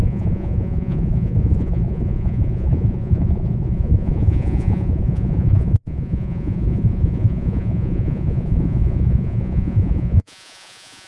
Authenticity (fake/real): fake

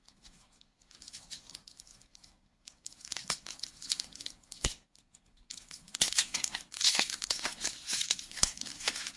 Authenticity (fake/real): fake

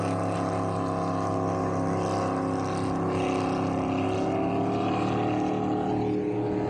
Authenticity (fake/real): real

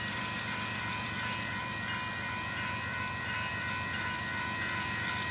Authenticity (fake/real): fake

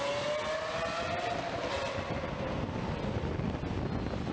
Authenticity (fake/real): real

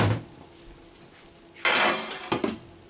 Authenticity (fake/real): real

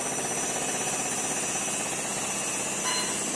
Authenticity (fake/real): real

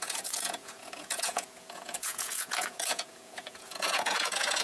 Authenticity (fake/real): fake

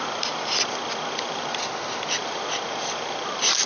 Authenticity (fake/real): real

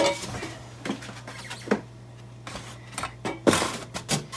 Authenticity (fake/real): real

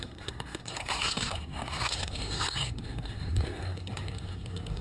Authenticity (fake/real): fake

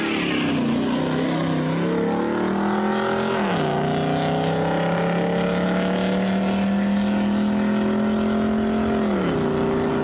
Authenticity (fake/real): real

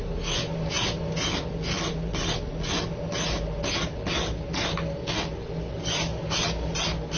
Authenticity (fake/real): real